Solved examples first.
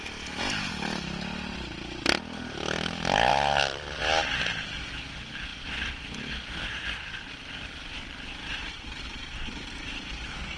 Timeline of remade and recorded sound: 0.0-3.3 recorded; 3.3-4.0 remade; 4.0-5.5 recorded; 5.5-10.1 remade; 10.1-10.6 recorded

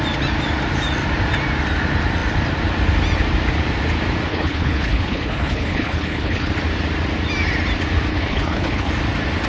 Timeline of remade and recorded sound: 0.0-4.3 recorded; 4.3-6.5 remade; 6.5-8.1 recorded; 8.1-8.9 remade; 8.9-9.5 recorded

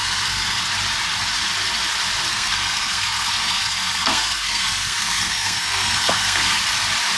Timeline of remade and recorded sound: 0.0-0.6 remade; 0.6-2.3 recorded; 2.3-6.6 remade; 6.6-7.2 recorded

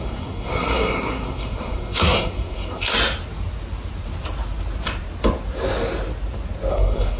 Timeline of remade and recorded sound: 0.0-2.9 remade; 2.9-6.7 recorded; 6.7-7.2 remade

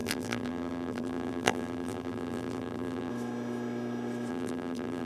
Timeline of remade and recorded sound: 0.0-3.1 remade; 3.1-4.3 recorded; 4.3-5.1 remade